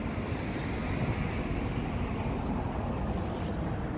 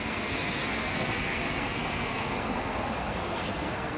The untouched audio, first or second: first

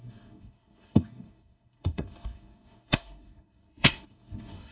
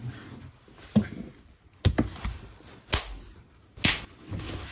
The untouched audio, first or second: second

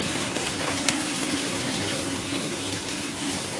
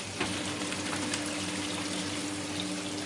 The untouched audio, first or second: second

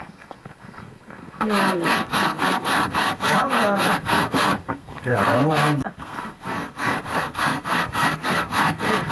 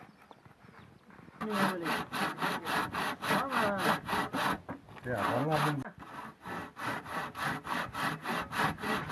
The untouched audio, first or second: second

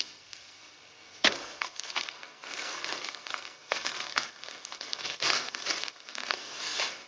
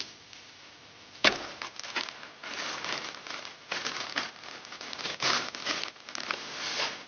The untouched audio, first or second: second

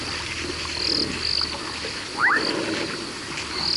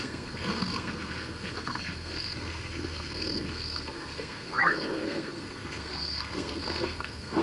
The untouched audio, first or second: first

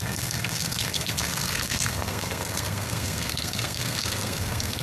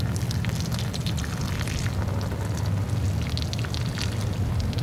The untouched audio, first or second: second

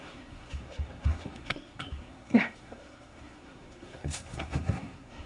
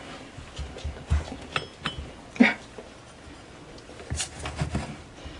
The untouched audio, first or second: second